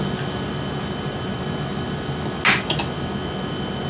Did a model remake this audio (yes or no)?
no